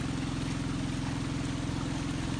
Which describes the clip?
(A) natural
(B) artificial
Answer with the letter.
A